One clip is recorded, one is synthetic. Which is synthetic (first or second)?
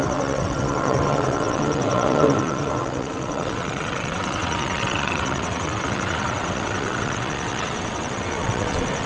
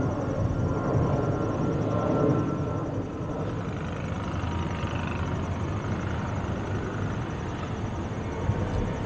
first